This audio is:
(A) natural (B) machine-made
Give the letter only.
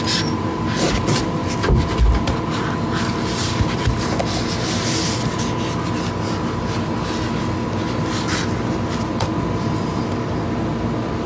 A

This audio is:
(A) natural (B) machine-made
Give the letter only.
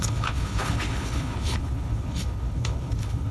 B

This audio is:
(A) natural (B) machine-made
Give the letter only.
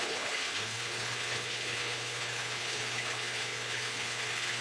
B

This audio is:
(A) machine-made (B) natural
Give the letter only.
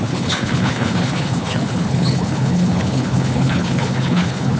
A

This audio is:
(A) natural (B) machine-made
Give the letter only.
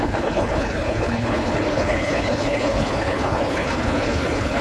B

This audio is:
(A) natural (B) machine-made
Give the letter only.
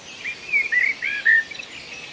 A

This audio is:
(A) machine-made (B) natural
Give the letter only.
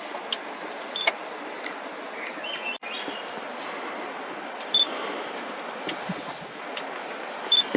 B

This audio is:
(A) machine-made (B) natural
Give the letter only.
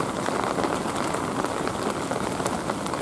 B